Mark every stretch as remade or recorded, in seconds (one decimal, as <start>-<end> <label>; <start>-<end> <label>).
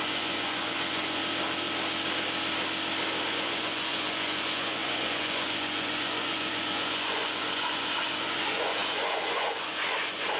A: 0.0-1.2 remade; 1.2-3.3 recorded; 3.3-10.4 remade